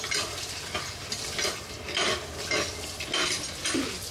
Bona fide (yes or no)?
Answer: yes